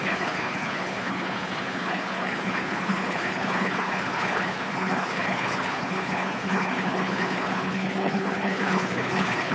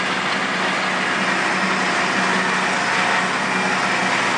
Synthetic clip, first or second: first